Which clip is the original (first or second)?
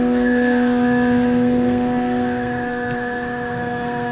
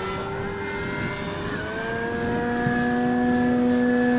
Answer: second